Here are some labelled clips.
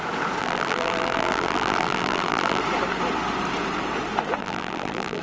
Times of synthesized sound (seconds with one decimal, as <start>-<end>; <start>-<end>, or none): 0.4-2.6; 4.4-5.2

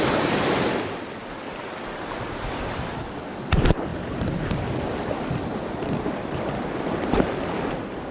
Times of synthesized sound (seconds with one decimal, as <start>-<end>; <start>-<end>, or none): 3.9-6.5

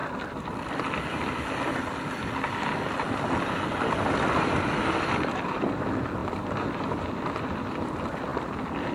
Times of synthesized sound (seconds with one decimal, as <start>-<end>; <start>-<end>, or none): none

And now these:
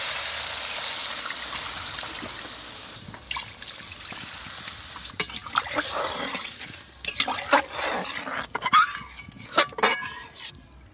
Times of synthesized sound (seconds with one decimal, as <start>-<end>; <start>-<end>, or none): 5.4-7.4

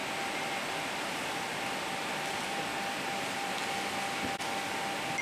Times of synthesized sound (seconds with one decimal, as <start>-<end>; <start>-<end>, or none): 1.1-3.6

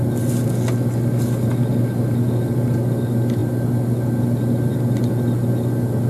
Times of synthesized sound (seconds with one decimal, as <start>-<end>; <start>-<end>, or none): none

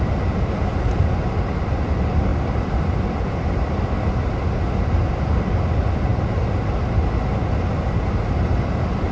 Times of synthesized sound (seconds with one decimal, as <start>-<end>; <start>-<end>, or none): 2.3-3.7

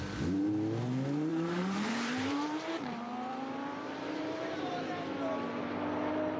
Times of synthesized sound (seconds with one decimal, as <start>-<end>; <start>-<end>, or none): 1.3-4.9